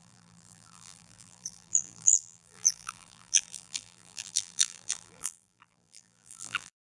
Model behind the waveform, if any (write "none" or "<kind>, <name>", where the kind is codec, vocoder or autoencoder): vocoder, BigVGAN v2